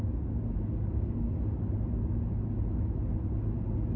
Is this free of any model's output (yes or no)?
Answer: yes